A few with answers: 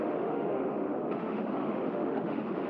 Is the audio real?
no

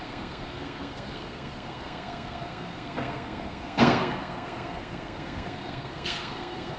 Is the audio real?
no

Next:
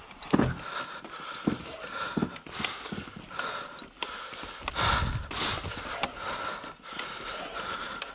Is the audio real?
yes